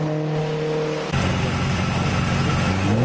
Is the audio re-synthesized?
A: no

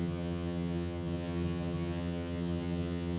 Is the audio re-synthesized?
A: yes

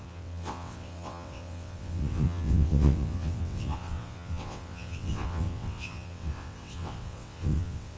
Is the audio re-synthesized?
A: yes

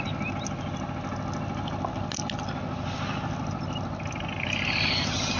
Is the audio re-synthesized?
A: no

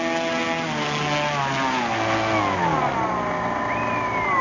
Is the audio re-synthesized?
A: no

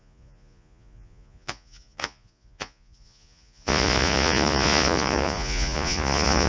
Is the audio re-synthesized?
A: yes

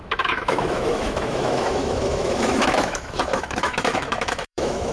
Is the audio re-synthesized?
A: yes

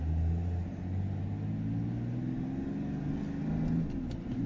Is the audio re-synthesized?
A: no